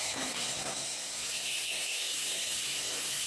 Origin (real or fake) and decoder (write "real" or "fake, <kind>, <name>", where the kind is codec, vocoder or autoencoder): fake, codec, SNAC